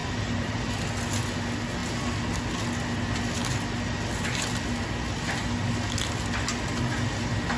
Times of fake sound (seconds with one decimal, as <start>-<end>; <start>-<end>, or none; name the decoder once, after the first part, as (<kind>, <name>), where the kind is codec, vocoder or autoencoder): 0.0-0.7 (vocoder, BigVGAN v2)